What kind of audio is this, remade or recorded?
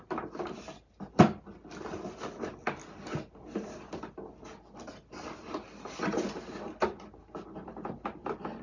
recorded